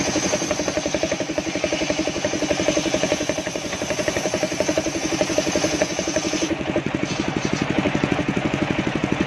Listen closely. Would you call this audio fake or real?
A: fake